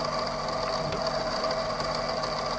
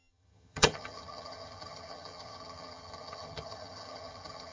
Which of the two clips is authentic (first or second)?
first